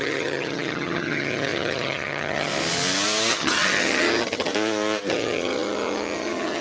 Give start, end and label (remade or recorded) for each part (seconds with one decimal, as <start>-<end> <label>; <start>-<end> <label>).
0.0-2.5 remade; 2.5-3.3 recorded; 3.3-4.5 remade; 4.5-5.1 recorded; 5.1-6.6 remade